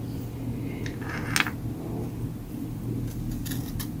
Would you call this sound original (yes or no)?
yes